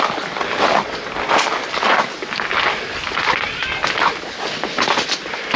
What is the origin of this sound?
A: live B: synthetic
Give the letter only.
A